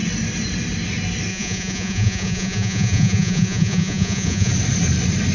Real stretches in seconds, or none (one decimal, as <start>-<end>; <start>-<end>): 0.0-1.3; 4.5-5.3